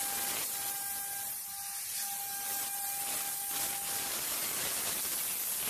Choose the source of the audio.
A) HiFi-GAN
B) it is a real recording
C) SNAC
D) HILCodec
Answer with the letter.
B